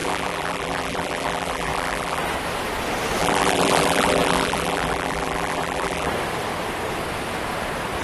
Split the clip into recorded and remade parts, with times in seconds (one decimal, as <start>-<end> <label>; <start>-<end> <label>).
0.0-2.2 remade; 2.2-3.2 recorded; 3.2-6.1 remade; 6.1-8.0 recorded